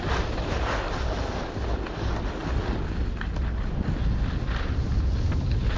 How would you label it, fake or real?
real